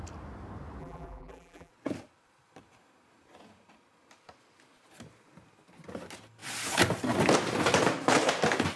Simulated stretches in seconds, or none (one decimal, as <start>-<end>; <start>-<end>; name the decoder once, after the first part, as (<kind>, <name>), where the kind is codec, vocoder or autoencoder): 0.8-1.7 (vocoder, BigVGAN v2)